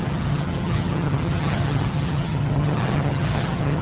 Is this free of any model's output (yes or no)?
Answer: no